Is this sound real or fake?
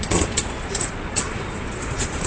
fake